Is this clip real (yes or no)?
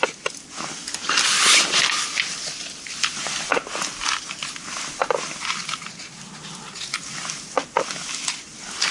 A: yes